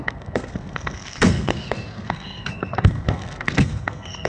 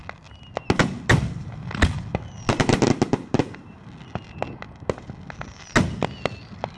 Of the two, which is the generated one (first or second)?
first